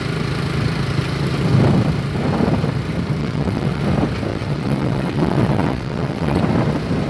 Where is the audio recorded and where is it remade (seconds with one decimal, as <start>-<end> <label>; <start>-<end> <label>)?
0.0-3.2 recorded; 3.2-3.8 remade; 3.8-4.3 recorded; 4.3-6.4 remade; 6.4-7.1 recorded